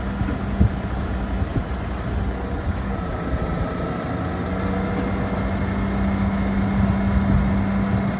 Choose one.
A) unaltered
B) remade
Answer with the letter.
A